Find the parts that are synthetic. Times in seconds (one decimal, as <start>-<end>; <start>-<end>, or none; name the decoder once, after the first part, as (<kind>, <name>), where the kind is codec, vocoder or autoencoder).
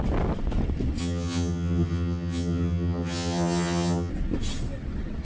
1.0-4.1 (vocoder, HiFi-GAN)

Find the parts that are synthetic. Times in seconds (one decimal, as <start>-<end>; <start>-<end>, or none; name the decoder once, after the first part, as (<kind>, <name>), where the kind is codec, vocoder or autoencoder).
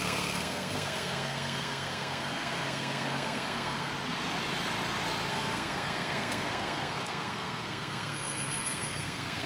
0.0-3.9 (codec, SNAC); 5.3-9.5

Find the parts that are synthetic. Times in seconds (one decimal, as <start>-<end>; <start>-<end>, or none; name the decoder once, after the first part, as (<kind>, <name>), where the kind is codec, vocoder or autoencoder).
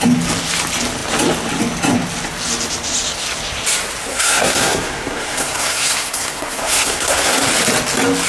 4.1-7.4 (codec, SNAC)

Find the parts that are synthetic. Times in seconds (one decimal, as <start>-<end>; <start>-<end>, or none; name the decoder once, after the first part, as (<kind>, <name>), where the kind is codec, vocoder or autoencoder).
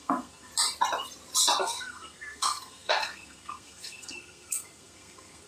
0.0-0.5 (codec, SNAC); 1.6-5.5